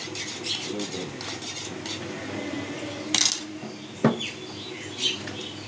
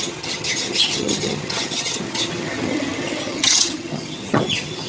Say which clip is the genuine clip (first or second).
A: first